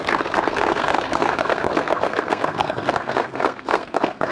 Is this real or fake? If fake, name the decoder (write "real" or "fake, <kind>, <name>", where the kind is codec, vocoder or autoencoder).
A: fake, codec, SNAC